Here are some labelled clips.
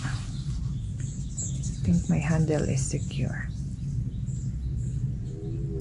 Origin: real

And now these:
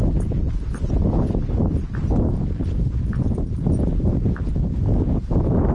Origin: real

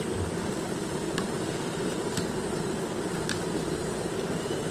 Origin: real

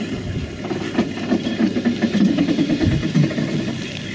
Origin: real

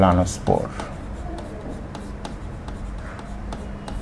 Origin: fake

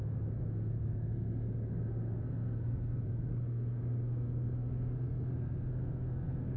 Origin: fake